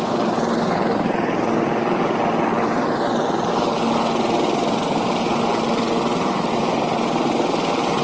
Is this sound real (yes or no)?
yes